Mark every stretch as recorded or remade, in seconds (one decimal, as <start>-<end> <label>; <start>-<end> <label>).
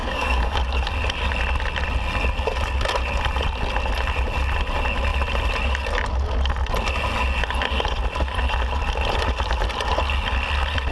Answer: 0.0-0.6 remade; 0.6-10.9 recorded